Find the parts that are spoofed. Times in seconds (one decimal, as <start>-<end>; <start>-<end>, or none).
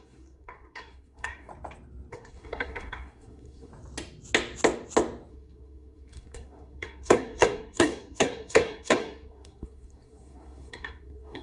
0.0-1.5; 2.1-3.7; 5.3-11.4